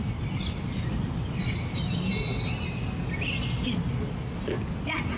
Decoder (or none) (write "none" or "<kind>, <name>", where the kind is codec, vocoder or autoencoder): none